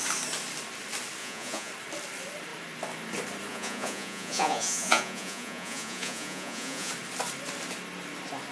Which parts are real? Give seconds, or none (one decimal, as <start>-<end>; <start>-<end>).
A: 0.0-1.2; 1.7-3.5; 6.9-8.5